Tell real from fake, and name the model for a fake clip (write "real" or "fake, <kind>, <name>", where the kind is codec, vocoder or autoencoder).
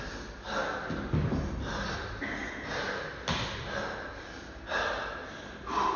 real